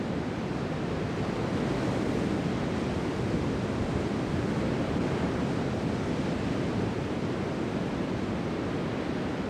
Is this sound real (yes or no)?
yes